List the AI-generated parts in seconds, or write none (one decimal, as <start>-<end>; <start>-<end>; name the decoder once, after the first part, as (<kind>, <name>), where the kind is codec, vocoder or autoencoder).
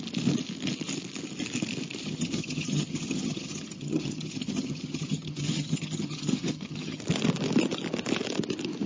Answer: 2.0-7.0 (vocoder, HiFi-GAN)